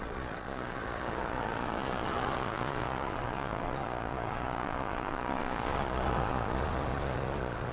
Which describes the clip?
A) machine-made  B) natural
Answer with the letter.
A